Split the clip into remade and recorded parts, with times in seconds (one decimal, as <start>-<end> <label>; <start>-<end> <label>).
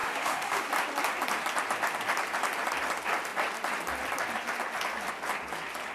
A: 0.0-0.7 remade; 0.7-5.9 recorded